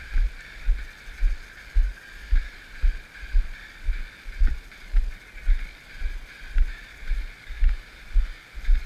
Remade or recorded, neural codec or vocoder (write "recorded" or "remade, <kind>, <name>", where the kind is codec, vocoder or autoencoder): recorded